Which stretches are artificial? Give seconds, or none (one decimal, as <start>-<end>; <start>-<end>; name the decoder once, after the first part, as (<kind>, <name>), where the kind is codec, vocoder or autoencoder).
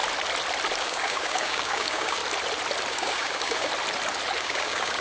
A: 0.8-2.2 (codec, DAC); 2.9-3.7; 4.4-5.0